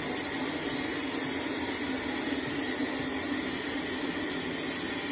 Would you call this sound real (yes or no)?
yes